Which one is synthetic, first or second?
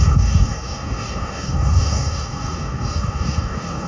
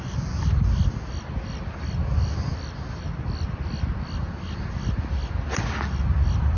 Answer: first